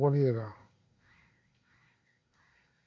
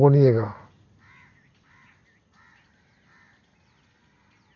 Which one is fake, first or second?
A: first